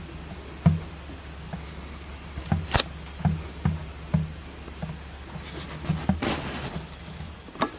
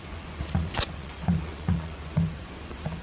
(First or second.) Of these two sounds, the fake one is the second